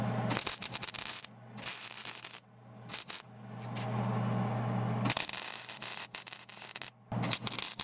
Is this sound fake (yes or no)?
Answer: no